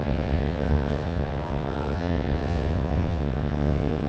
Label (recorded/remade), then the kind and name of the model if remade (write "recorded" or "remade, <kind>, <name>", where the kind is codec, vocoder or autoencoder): remade, vocoder, WaveNeXt